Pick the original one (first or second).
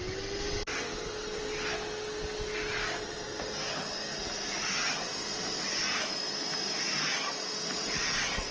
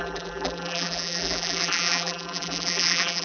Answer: first